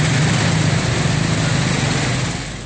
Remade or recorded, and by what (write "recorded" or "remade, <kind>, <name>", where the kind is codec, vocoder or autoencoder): recorded